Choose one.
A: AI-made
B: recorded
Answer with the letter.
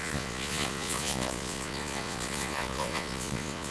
A